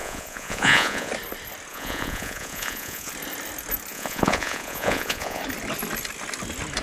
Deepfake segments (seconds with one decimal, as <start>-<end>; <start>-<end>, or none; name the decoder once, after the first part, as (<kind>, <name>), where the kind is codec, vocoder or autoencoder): 0.0-1.1 (vocoder, Vocos); 1.7-3.1; 3.9-5.4